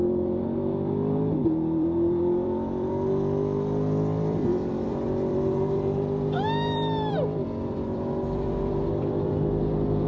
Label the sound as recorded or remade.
remade